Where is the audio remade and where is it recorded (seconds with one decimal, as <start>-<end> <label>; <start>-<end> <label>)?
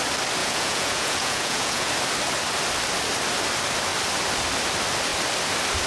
0.0-0.4 recorded; 0.4-1.9 remade; 1.9-5.9 recorded